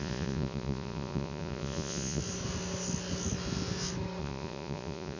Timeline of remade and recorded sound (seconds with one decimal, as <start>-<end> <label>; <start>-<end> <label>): 0.0-2.2 remade; 2.2-4.2 recorded; 4.2-5.2 remade